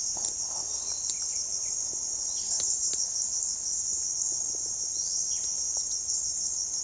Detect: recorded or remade recorded